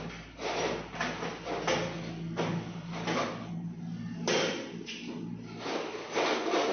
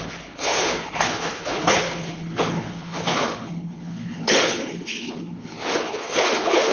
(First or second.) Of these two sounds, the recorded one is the first